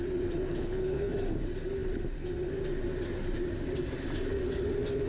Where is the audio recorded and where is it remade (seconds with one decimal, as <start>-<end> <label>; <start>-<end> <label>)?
0.0-0.5 recorded; 0.5-1.1 remade; 1.1-5.1 recorded